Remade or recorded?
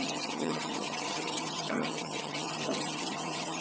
remade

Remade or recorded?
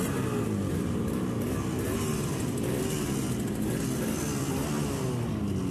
recorded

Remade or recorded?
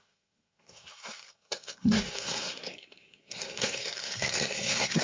remade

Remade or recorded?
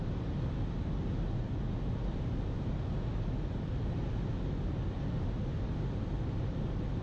recorded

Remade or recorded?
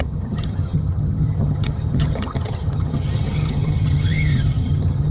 remade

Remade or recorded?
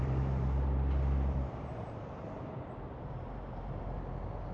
remade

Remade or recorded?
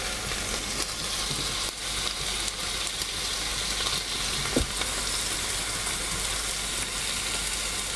recorded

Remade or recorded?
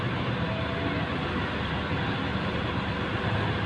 recorded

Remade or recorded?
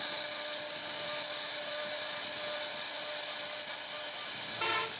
recorded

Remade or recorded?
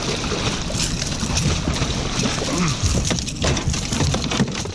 recorded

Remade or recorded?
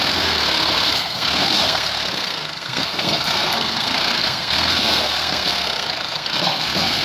remade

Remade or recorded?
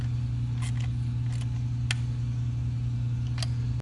recorded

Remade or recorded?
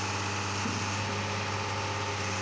recorded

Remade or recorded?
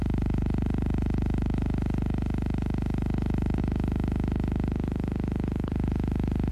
recorded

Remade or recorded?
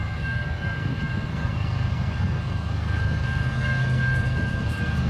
remade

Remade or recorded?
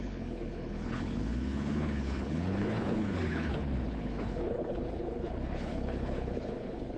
remade